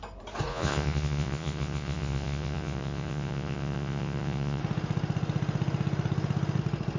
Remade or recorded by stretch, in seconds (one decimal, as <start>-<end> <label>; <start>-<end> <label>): 0.0-0.5 recorded; 0.5-4.6 remade; 4.6-7.0 recorded